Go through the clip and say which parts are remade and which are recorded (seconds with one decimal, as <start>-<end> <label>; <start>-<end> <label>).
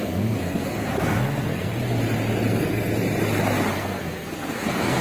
0.0-1.7 remade; 1.7-2.5 recorded; 2.5-2.9 remade; 2.9-3.7 recorded; 3.7-5.0 remade